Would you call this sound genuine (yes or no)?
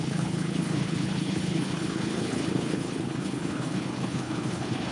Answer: no